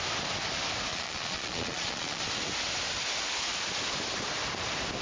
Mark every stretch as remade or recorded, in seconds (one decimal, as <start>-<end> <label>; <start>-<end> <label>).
0.0-0.9 recorded; 0.9-2.2 remade; 2.2-5.0 recorded